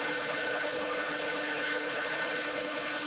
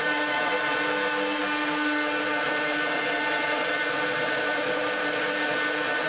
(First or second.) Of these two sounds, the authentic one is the second